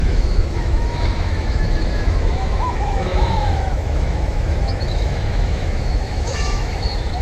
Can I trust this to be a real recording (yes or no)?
no